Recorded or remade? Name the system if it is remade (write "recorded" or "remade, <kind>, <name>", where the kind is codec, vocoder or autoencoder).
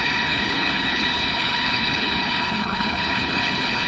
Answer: remade, codec, HILCodec